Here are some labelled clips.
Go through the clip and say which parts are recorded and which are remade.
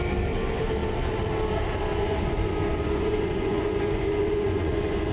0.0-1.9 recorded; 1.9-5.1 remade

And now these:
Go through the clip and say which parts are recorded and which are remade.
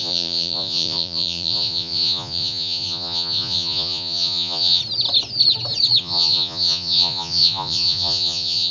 0.0-4.8 remade; 4.8-6.0 recorded; 6.0-8.7 remade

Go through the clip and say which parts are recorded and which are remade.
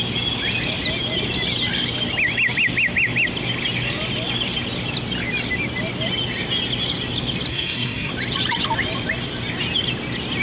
0.0-7.5 recorded; 7.5-8.1 remade; 8.1-10.4 recorded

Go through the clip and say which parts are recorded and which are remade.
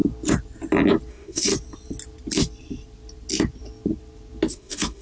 0.0-1.1 recorded; 1.1-1.5 remade; 1.5-4.5 recorded; 4.5-5.0 remade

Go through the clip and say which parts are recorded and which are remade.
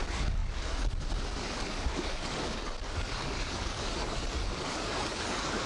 0.0-5.7 remade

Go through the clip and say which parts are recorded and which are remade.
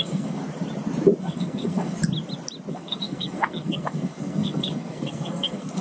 0.0-0.4 remade; 0.4-1.2 recorded; 1.2-2.0 remade; 2.0-2.7 recorded; 2.7-5.8 remade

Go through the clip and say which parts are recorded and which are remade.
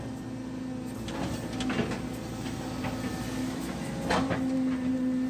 0.0-3.4 recorded; 3.4-3.9 remade; 3.9-5.3 recorded